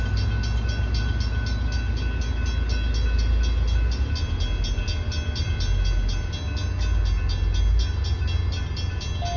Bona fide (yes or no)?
yes